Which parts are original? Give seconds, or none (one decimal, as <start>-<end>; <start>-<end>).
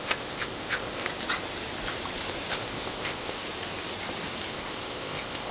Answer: 1.1-2.5; 3.4-4.5